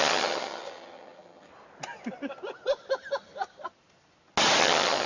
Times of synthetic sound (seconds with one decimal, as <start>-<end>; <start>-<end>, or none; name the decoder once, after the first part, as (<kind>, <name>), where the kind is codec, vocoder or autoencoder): 0.0-1.5 (vocoder, HiFi-GAN); 4.6-5.1